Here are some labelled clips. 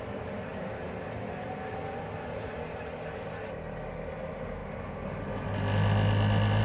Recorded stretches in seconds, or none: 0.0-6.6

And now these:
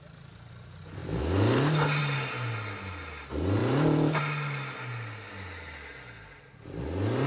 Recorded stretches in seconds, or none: 0.0-7.3

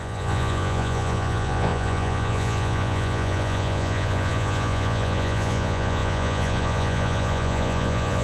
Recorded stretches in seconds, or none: none